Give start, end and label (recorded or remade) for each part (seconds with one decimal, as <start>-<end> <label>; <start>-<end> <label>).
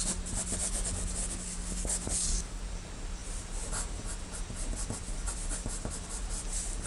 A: 0.0-0.6 recorded; 0.6-2.6 remade; 2.6-6.9 recorded